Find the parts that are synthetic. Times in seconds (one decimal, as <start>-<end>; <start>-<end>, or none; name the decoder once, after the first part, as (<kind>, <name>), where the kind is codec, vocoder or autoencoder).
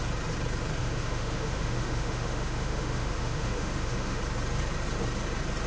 0.8-4.2 (autoencoder, DAC-VAE)